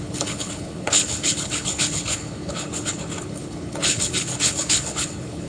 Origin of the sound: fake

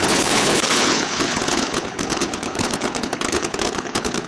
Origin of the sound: fake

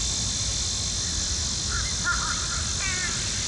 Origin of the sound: real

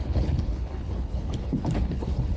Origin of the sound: fake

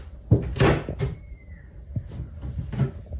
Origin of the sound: real